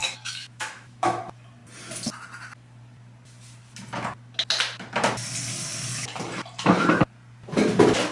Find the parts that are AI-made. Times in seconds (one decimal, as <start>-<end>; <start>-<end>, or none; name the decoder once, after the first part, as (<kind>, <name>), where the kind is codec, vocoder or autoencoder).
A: 0.0-1.2 (autoencoder, DAC-VAE)